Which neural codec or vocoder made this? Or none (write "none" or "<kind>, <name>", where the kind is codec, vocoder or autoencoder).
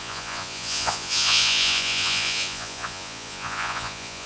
vocoder, Vocos